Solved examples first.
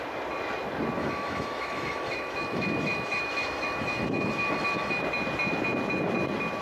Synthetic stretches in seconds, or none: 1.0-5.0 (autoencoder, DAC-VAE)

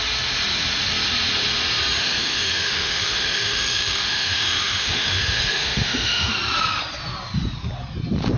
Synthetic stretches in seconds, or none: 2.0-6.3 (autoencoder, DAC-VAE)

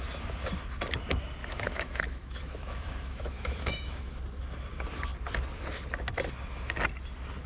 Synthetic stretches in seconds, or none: 1.4-4.2 (autoencoder, DAC-VAE)

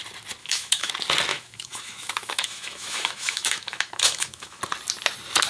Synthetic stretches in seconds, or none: 0.4-0.9 (autoencoder, DAC-VAE); 1.3-4.6

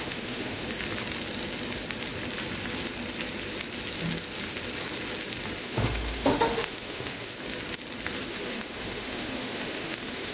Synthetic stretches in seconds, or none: 0.0-0.6 (autoencoder, DAC-VAE); 5.6-7.3; 8.3-10.3